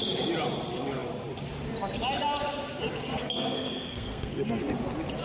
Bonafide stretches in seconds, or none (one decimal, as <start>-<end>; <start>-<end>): 0.0-3.1; 4.6-5.2